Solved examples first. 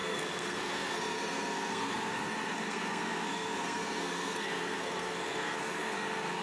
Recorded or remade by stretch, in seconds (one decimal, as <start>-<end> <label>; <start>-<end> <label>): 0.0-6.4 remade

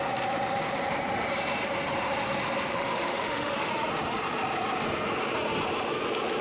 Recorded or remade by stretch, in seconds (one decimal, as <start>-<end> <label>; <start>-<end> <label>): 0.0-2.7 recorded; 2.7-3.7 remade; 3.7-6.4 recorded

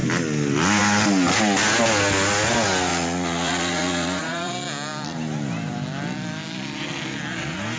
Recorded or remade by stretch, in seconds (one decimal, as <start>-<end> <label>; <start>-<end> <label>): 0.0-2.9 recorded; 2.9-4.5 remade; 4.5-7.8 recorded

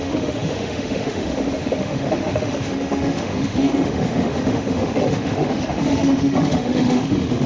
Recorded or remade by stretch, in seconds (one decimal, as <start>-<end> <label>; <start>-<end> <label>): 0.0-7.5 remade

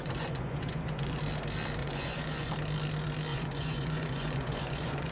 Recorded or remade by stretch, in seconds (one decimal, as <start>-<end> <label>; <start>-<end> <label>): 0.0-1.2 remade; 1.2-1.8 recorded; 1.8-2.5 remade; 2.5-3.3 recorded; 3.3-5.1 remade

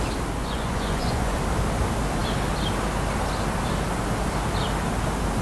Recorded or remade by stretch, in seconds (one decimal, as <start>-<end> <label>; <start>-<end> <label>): 0.0-0.4 recorded; 0.4-1.4 remade; 1.4-5.4 recorded

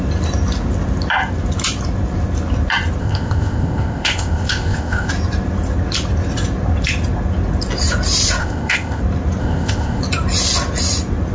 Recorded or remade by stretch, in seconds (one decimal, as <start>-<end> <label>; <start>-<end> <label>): 0.0-3.0 recorded; 3.0-5.1 remade; 5.1-8.4 recorded; 8.4-9.0 remade; 9.0-9.4 recorded; 9.4-10.0 remade; 10.0-11.3 recorded

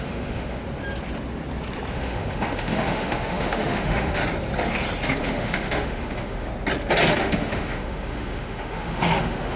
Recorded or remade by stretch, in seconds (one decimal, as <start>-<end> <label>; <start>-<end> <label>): 0.0-0.6 remade; 0.6-1.9 recorded; 1.9-4.2 remade; 4.2-5.2 recorded; 5.2-6.5 remade; 6.5-7.2 recorded; 7.2-9.6 remade